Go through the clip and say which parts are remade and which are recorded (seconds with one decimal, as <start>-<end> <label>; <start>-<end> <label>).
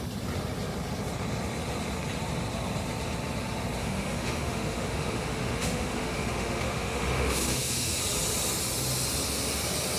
0.0-3.8 recorded; 3.8-8.0 remade; 8.0-10.0 recorded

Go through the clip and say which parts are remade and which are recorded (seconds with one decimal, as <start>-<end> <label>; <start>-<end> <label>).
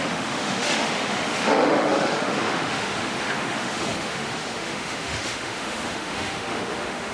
0.0-7.1 remade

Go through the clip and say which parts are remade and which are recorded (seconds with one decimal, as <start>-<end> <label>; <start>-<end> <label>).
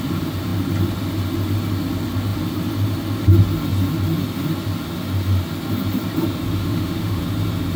0.0-6.6 recorded; 6.6-7.2 remade; 7.2-7.8 recorded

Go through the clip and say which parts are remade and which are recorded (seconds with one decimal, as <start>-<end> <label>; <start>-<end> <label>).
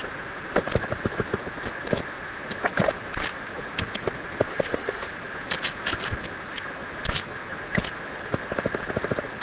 0.0-4.5 recorded; 4.5-5.1 remade; 5.1-9.4 recorded